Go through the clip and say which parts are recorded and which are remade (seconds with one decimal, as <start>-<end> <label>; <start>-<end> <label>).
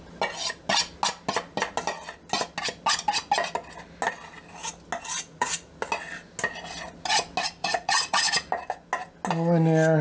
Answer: 0.0-5.3 recorded; 5.3-5.8 remade; 5.8-7.6 recorded; 7.6-8.2 remade; 8.2-10.0 recorded